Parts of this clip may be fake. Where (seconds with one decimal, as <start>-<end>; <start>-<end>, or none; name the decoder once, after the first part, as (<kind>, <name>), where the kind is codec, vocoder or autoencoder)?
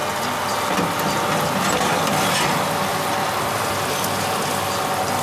2.9-3.6 (vocoder, BigVGAN v2)